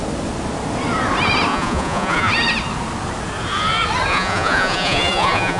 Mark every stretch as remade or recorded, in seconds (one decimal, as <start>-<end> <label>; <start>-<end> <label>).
0.0-1.5 recorded; 1.5-2.3 remade; 2.3-4.1 recorded; 4.1-5.6 remade